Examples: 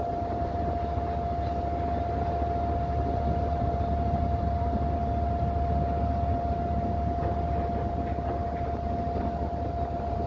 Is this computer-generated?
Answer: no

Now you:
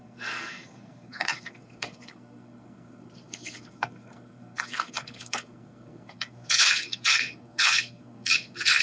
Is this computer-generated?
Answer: yes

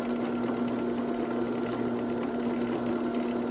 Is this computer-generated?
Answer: no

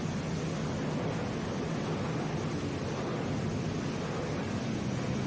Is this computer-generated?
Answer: no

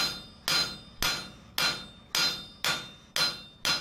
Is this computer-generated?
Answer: no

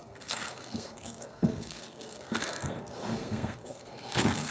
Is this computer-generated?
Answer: yes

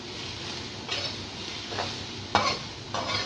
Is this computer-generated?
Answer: no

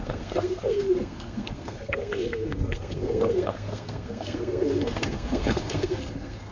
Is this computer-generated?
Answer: yes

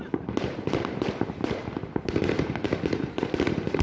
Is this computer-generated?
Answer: no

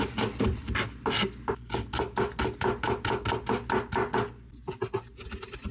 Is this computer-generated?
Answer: no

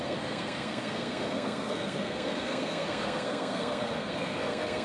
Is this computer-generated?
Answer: yes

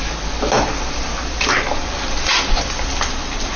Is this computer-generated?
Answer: no